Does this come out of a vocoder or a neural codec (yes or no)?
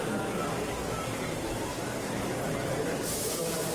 yes